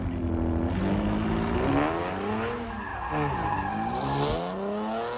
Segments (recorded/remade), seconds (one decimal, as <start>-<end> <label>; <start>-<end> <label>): 0.0-5.2 recorded